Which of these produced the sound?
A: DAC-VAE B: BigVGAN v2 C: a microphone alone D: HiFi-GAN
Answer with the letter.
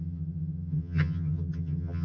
D